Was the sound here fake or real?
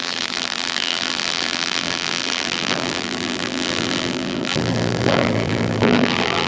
fake